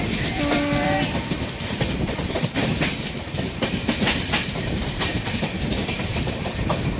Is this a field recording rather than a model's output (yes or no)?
no